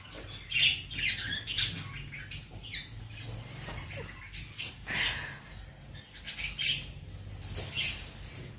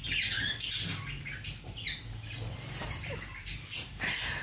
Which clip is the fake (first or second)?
second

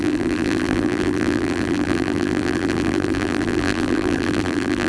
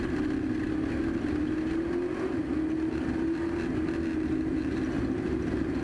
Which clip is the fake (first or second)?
first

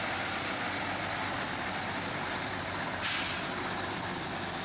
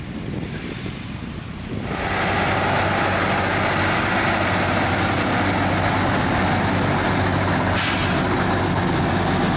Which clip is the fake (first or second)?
first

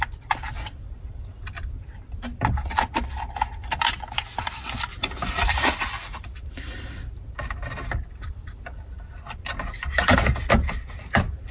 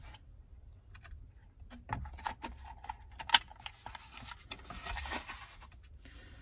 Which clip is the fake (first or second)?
first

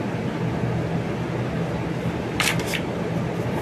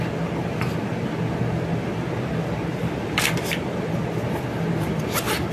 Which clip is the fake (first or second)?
second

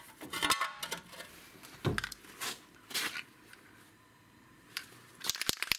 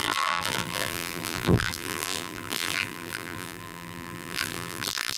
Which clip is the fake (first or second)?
second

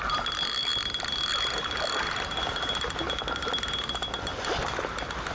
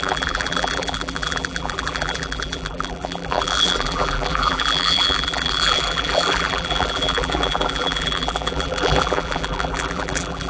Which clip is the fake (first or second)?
second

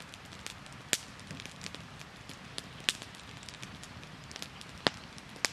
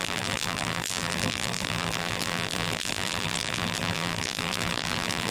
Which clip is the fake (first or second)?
second